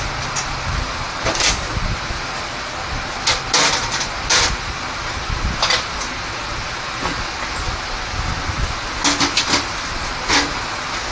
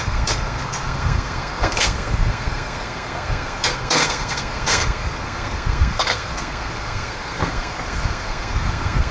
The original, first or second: first